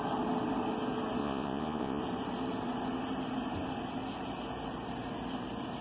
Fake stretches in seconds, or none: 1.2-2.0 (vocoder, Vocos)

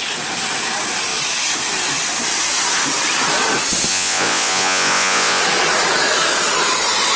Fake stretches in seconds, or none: 3.9-5.4 (vocoder, Vocos)

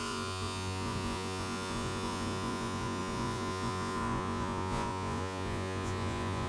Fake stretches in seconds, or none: 0.0-6.5 (vocoder, Vocos)

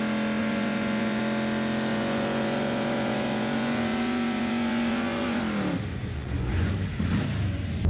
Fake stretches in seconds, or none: 0.4-1.2 (vocoder, Vocos); 1.9-5.4; 5.9-6.7

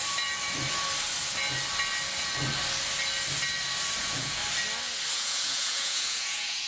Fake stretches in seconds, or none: 4.0-4.4 (vocoder, Vocos); 5.1-6.7

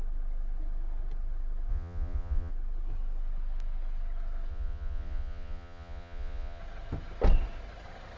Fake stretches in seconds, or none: 1.7-2.5 (vocoder, Vocos); 4.5-6.6

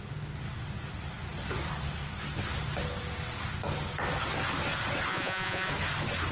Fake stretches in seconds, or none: 5.1-5.7 (vocoder, Vocos)

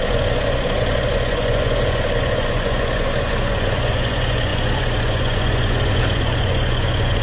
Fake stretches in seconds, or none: 0.0-7.2 (vocoder, Vocos)